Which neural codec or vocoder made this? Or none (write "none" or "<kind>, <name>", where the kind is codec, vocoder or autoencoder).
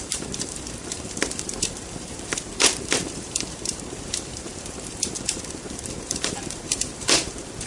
vocoder, BigVGAN v2